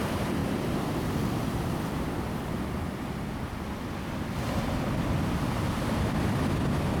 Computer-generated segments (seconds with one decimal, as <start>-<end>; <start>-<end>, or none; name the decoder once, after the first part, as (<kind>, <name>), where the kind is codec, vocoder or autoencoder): none

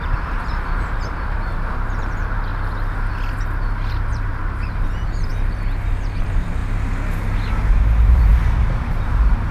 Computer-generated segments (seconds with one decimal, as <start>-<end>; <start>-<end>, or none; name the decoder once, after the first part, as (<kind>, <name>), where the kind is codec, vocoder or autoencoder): 0.0-2.5 (vocoder, BigVGAN v2); 3.9-5.3; 5.9-6.6; 7.7-9.5

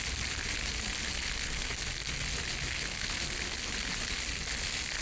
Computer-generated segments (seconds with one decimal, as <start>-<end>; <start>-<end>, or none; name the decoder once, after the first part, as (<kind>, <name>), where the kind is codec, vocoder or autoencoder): none

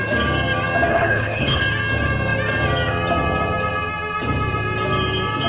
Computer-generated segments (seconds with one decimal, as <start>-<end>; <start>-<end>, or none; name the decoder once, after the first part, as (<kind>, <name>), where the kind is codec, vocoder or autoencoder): 0.9-1.6 (codec, HILCodec)

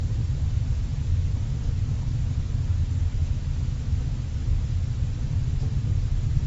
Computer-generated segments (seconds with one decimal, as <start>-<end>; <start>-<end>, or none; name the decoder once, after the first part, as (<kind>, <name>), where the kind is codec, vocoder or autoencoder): 3.2-4.2 (autoencoder, DAC-VAE)

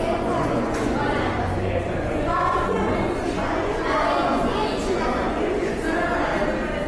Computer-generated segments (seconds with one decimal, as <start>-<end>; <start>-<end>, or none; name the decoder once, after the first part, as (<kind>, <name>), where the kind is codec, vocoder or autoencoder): 0.0-6.3 (vocoder, Vocos)

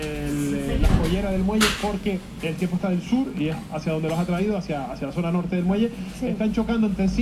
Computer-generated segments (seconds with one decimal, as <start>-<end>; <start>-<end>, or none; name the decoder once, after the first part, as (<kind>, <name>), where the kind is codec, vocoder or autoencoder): 1.8-2.4 (codec, DAC)

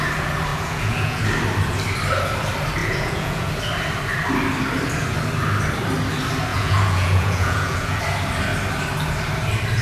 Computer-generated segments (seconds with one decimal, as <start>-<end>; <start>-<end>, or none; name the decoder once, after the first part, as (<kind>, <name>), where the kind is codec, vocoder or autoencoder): 0.5-1.2 (vocoder, Vocos); 2.8-3.5; 6.5-8.0